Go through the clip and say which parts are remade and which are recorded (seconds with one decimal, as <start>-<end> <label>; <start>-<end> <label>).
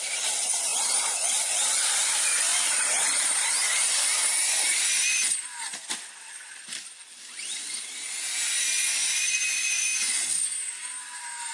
0.0-0.7 recorded; 0.7-3.2 remade; 3.2-3.6 recorded; 3.6-5.2 remade; 5.2-11.5 recorded